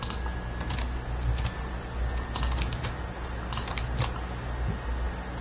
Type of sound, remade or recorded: recorded